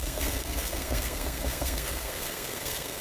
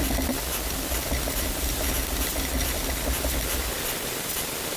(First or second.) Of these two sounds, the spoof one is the first